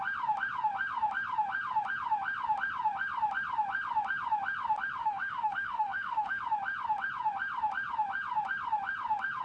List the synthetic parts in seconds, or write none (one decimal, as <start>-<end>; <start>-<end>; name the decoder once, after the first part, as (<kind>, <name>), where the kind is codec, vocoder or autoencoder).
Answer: 5.0-6.4 (autoencoder, DAC-VAE)